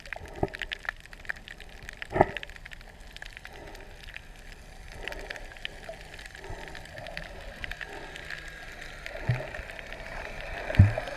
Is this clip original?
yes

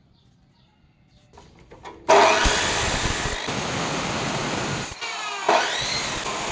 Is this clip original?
yes